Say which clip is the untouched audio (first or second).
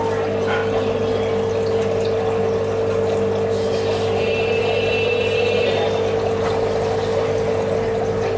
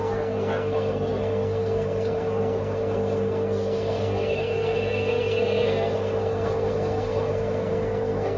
first